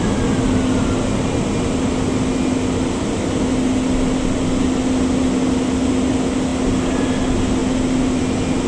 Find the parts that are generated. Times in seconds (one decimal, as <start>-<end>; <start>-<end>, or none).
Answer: none